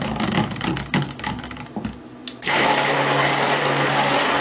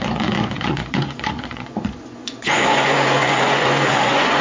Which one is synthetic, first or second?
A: second